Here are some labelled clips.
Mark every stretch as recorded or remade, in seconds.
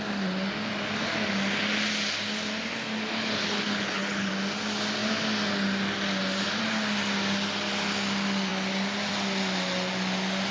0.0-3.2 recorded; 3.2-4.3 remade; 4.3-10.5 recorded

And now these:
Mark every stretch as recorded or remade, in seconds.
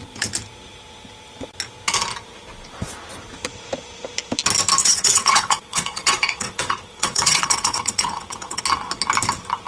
0.0-4.8 recorded; 4.8-8.6 remade; 8.6-9.7 recorded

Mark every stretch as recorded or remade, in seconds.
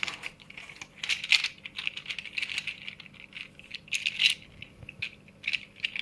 0.0-6.0 recorded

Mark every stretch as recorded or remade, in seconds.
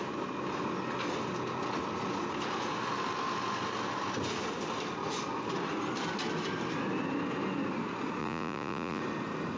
0.0-8.2 recorded; 8.2-9.0 remade; 9.0-9.6 recorded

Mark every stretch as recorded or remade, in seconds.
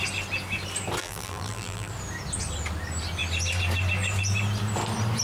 0.0-1.0 recorded; 1.0-1.9 remade; 1.9-5.2 recorded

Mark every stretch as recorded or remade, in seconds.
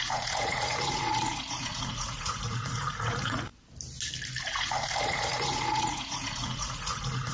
0.0-3.5 remade; 3.5-4.4 recorded; 4.4-7.3 remade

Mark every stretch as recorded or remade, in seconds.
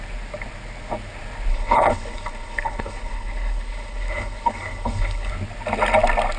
0.0-1.5 recorded; 1.5-5.3 remade; 5.3-6.4 recorded